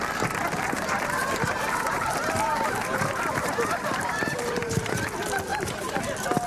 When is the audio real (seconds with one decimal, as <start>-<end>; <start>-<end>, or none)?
0.0-1.2; 5.1-5.5; 6.0-6.5